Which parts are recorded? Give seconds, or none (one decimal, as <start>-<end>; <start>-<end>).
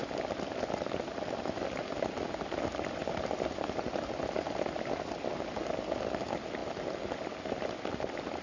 0.0-8.4